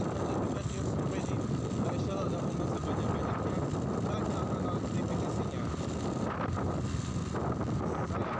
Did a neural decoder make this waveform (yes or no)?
no